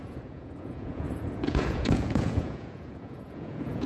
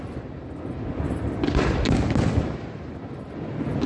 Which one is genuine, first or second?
second